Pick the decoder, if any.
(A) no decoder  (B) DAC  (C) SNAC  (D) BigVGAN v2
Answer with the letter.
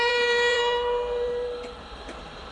D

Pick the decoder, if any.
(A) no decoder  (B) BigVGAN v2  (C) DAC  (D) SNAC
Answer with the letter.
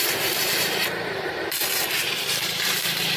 B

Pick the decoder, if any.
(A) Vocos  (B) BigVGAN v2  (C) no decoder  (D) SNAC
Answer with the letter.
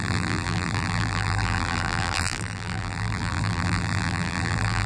B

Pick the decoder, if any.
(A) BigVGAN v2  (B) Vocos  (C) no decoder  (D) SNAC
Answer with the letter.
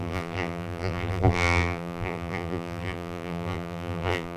A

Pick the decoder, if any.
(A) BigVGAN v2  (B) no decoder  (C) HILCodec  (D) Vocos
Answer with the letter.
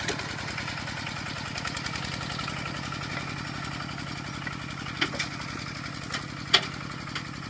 B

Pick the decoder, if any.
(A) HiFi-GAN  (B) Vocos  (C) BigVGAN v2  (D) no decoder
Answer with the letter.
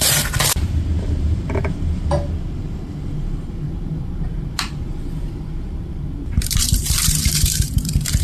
C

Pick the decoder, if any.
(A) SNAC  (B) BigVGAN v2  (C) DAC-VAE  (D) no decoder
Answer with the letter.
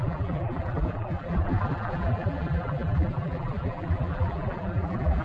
B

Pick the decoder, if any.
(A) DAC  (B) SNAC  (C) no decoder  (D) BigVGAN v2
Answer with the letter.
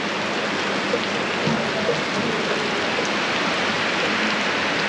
C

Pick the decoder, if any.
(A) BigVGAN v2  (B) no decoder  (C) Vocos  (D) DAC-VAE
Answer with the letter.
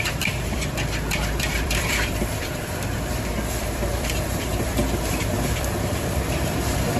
A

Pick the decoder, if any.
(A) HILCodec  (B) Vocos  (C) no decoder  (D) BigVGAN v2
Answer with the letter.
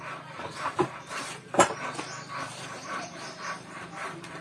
D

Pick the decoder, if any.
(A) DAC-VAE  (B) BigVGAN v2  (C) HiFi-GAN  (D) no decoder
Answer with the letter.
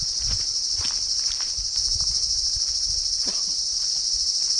B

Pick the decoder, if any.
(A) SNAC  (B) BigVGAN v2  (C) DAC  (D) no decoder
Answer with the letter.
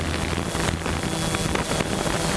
D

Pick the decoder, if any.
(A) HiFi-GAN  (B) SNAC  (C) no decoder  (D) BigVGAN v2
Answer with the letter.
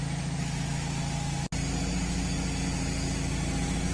C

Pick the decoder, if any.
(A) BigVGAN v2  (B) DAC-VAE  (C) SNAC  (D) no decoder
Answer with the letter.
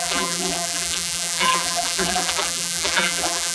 A